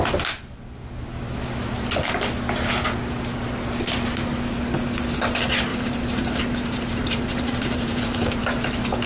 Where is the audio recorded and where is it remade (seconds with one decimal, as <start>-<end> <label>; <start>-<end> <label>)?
0.0-5.7 recorded; 5.7-8.4 remade; 8.4-9.1 recorded